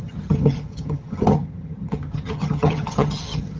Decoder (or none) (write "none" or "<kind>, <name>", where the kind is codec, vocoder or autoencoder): vocoder, HiFi-GAN